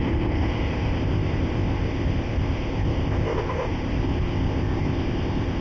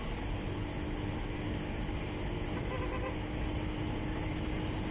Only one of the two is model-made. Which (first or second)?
first